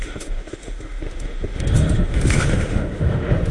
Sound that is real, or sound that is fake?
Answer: fake